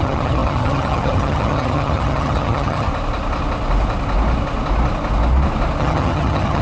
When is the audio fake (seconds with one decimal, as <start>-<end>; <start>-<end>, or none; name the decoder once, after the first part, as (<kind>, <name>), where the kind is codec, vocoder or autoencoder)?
0.0-2.9 (vocoder, HiFi-GAN); 5.8-6.6